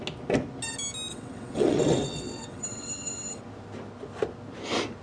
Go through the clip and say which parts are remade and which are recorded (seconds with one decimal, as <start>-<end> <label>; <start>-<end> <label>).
0.0-1.1 recorded; 1.1-3.4 remade; 3.4-5.0 recorded